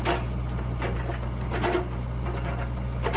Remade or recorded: recorded